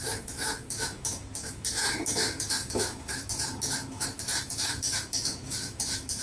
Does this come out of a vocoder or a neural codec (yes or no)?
yes